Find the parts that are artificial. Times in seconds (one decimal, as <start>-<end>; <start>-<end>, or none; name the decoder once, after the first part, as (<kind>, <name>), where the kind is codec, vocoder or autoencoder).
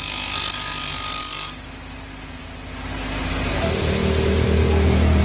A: none